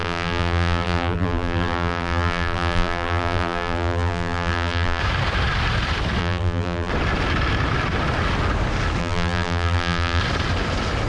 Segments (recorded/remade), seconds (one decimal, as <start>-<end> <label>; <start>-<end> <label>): 0.0-5.0 remade; 5.0-6.2 recorded; 6.2-6.9 remade; 6.9-9.0 recorded; 9.0-10.2 remade; 10.2-11.1 recorded